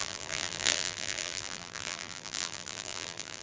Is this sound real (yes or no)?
no